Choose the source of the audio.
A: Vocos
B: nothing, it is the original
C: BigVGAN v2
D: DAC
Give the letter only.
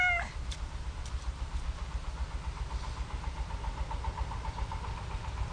B